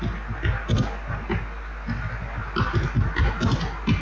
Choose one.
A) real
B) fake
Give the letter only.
A